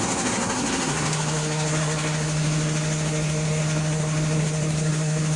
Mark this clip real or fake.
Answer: fake